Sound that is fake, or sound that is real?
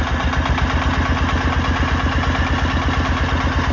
real